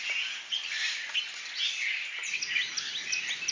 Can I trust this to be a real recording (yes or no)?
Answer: yes